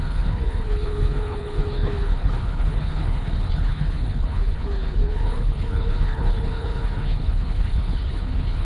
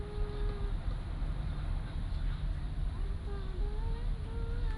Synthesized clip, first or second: first